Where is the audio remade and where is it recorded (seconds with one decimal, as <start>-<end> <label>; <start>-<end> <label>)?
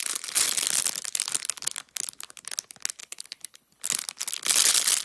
0.0-3.0 recorded; 3.0-3.8 remade; 3.8-5.0 recorded